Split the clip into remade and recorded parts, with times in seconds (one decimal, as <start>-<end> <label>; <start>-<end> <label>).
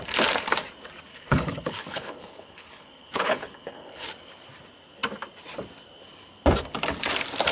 0.0-1.1 recorded; 1.1-4.1 remade; 4.1-7.5 recorded